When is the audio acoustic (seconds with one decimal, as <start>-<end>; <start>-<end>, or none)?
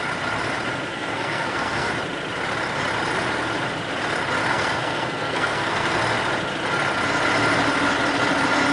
0.0-0.9; 1.9-4.5; 6.0-8.7